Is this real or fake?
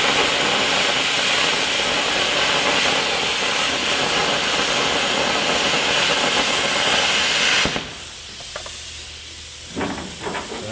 real